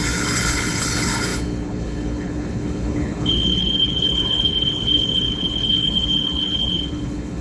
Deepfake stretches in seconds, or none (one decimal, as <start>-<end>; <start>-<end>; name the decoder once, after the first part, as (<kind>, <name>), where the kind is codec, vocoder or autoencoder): 0.0-7.4 (codec, HILCodec)